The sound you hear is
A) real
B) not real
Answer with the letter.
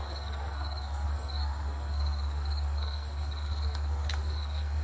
B